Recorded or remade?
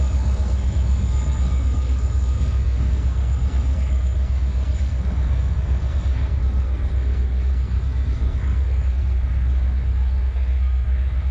remade